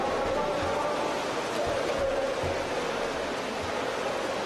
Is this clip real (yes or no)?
yes